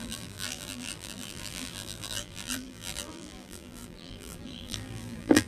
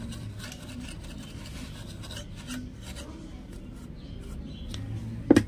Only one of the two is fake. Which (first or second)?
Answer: first